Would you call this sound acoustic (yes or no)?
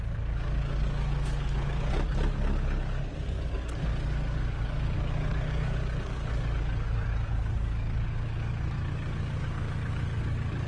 no